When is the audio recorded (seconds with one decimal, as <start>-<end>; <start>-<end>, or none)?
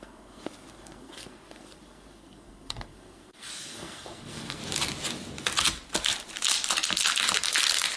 4.6-8.0